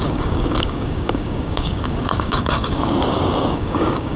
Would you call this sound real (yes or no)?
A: no